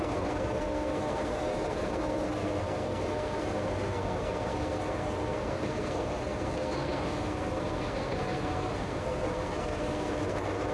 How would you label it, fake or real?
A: fake